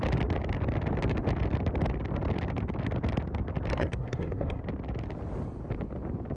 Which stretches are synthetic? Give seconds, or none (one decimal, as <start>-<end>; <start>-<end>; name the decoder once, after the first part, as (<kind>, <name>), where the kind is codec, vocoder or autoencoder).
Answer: 3.7-4.6 (codec, SNAC)